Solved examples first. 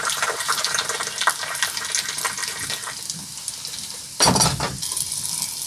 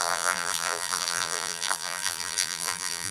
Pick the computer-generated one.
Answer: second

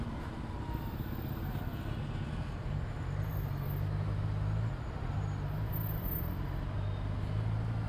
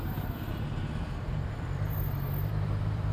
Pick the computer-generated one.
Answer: second